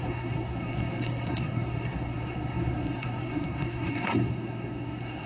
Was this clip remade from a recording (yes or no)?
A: yes